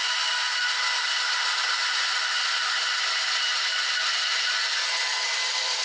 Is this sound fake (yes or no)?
no